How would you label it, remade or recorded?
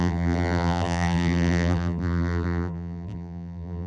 remade